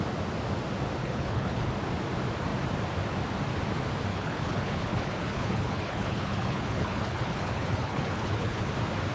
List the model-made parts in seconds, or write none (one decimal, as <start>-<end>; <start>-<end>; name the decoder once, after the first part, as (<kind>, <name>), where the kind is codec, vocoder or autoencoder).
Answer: 1.0-1.7 (codec, HILCodec); 4.1-8.7

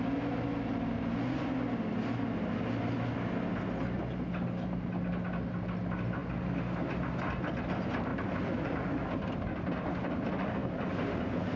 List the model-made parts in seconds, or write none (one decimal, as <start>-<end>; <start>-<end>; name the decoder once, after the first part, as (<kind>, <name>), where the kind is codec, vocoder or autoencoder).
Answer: none

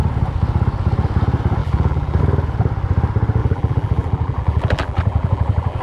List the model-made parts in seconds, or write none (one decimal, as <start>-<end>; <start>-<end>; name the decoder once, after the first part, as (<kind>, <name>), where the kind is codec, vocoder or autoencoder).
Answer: 1.6-2.2 (vocoder, BigVGAN v2); 3.4-5.8

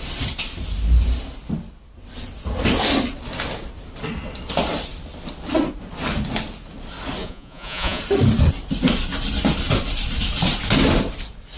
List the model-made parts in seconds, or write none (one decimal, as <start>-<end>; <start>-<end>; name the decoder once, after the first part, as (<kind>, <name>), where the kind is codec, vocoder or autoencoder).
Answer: 7.2-8.0 (vocoder, Vocos)

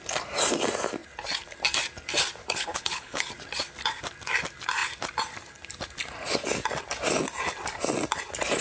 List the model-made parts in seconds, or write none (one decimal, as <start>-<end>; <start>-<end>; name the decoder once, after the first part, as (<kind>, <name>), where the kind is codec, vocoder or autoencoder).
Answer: 2.4-3.3 (codec, HILCodec)

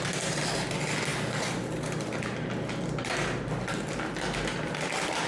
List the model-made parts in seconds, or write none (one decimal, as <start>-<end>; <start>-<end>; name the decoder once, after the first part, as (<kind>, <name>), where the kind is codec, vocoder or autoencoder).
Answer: none

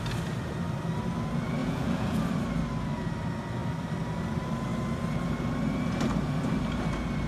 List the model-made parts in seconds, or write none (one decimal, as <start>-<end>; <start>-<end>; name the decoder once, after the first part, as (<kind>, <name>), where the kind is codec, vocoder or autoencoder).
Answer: 1.6-2.2 (vocoder, Vocos)

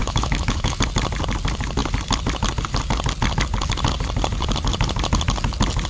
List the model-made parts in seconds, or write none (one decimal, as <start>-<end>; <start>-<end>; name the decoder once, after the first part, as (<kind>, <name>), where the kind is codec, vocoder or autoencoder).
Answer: 0.0-0.8 (autoencoder, DAC-VAE)